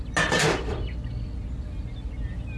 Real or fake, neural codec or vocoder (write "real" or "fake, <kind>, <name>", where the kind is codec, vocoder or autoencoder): real